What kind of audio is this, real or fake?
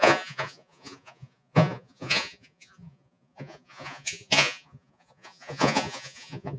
fake